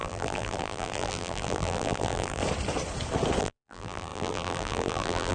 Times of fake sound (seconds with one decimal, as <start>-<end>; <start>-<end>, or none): 0.0-2.4; 3.4-5.3

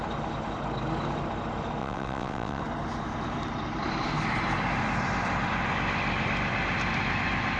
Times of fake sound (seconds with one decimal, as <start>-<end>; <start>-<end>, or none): 1.8-2.6

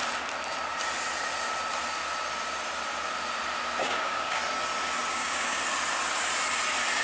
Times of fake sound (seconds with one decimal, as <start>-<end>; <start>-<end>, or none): 3.8-4.4; 5.1-5.6

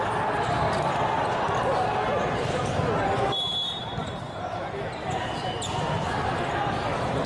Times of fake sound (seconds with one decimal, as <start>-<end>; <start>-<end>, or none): 0.0-7.3

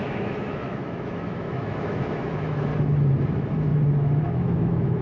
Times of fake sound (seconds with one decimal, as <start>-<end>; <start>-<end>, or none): 0.0-2.7; 3.3-3.7; 4.2-5.0

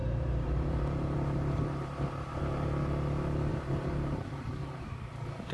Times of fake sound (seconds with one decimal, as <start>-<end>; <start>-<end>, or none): 0.0-2.7; 3.5-4.9

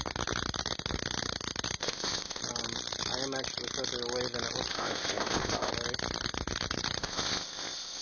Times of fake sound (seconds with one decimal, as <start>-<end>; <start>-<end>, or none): 1.8-2.4; 4.7-5.7; 7.0-8.0